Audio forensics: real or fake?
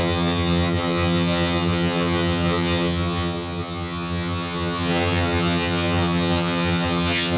fake